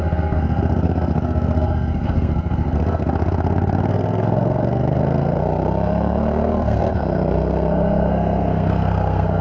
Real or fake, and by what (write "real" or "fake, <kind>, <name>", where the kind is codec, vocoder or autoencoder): fake, codec, SNAC